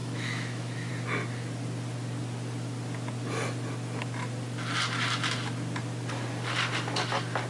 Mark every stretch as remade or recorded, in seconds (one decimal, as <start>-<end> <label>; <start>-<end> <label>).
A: 0.0-0.9 remade; 0.9-7.5 recorded